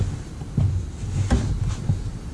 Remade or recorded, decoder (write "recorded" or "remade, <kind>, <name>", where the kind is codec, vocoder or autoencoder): recorded